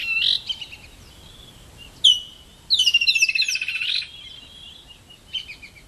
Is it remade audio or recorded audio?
recorded